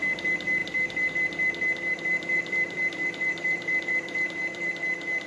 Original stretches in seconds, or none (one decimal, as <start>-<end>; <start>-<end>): 0.0-0.6; 1.1-2.1; 4.7-5.3